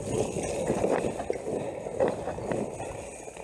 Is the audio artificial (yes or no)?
no